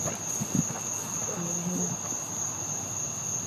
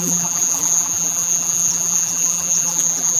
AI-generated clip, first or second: second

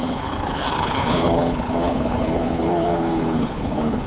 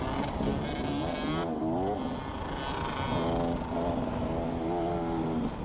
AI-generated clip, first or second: first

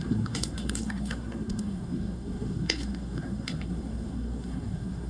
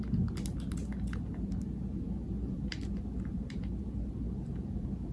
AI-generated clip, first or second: first